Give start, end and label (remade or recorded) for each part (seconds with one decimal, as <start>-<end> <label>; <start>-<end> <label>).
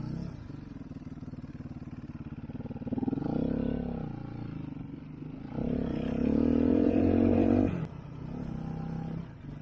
0.0-6.7 recorded; 6.7-7.6 remade; 7.6-9.6 recorded